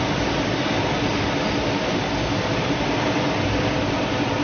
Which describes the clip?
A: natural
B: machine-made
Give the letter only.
A